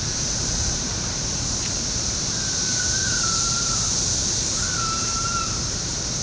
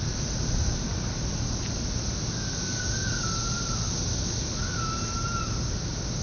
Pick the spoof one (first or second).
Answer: first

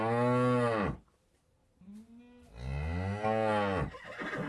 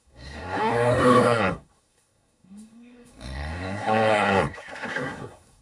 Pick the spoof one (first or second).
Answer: second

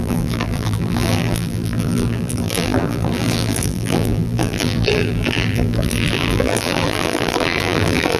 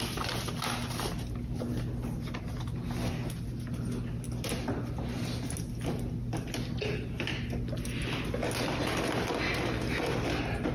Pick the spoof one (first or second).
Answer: first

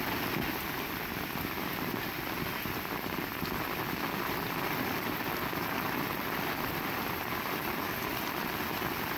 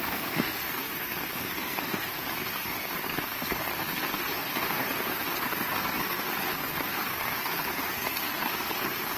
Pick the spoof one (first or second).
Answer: second